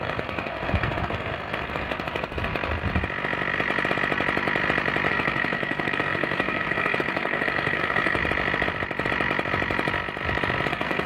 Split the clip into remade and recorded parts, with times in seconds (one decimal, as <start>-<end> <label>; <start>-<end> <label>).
0.0-2.5 remade; 2.5-5.1 recorded; 5.1-8.2 remade; 8.2-10.7 recorded; 10.7-11.1 remade